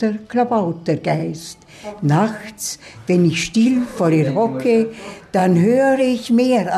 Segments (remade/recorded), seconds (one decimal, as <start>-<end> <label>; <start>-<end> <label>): 0.0-6.8 recorded